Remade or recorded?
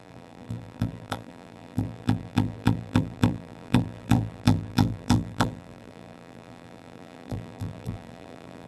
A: remade